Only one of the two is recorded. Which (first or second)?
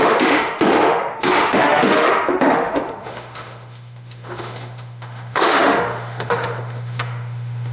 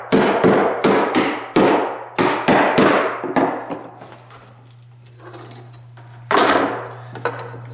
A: second